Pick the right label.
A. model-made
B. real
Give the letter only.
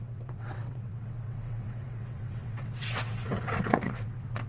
A